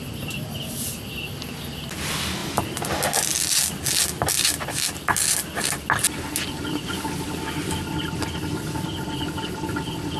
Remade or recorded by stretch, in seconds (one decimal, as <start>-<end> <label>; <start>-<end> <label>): 0.0-10.2 recorded